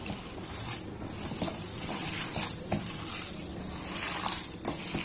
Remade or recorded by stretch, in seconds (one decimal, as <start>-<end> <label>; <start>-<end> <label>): 0.0-2.7 remade; 2.7-5.0 recorded